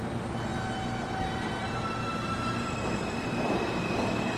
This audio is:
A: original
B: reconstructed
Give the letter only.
A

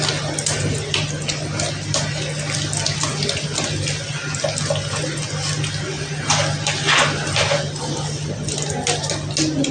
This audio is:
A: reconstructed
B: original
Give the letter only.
B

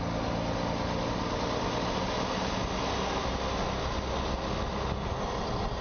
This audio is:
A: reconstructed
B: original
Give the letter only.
B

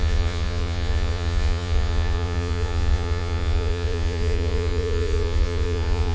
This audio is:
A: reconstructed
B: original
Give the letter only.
A